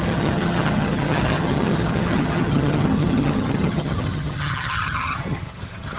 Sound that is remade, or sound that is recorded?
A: remade